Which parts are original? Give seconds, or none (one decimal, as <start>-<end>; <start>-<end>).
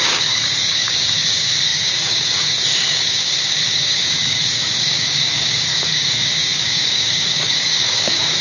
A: none